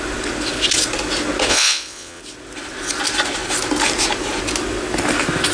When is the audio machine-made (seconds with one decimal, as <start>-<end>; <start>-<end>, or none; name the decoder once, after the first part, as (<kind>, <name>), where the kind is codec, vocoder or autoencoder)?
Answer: 1.5-2.2 (vocoder, WaveNeXt)